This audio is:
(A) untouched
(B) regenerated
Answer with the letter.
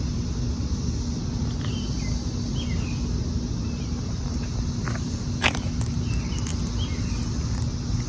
A